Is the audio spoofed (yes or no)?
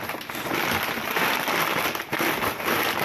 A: no